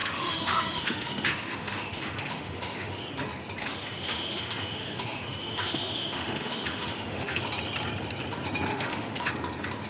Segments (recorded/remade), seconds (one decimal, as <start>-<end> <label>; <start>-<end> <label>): 0.0-3.0 remade; 3.0-3.6 recorded; 3.6-7.4 remade; 7.4-8.7 recorded; 8.7-9.3 remade; 9.3-9.9 recorded